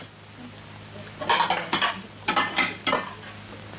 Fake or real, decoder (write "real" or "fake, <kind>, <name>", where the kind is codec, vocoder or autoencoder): real